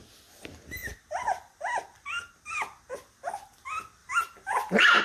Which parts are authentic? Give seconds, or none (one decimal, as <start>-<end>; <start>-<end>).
0.0-4.0